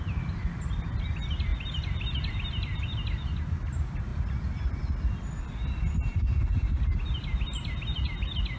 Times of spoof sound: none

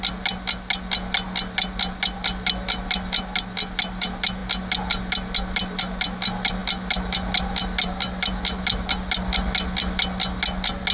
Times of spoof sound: none

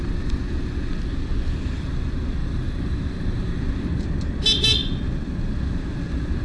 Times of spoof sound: 2.4-3.6 (vocoder, BigVGAN v2)

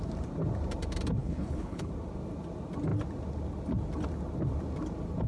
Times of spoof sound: 1.2-1.9 (codec, HILCodec)

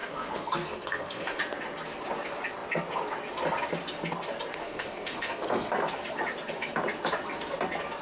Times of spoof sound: 0.0-1.4 (codec, SNAC); 4.6-5.7

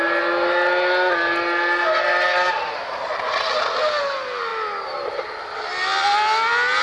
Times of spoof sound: none

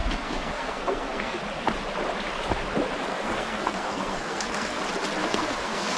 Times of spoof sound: 0.0-1.4 (codec, SNAC); 3.1-4.8; 5.2-6.0

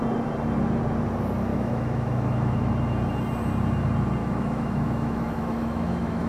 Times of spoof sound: 1.5-2.7 (autoencoder, DAC-VAE); 4.2-6.3